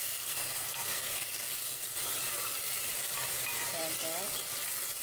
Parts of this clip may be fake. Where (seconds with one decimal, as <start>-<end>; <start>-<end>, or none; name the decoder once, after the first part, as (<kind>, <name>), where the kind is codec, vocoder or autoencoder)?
0.0-2.1 (codec, SNAC)